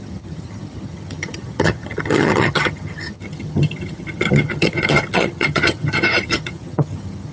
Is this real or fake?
fake